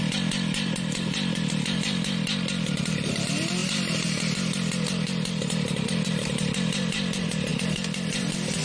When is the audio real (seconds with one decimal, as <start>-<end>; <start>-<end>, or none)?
0.0-8.6